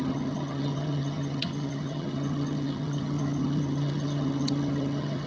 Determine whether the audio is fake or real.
fake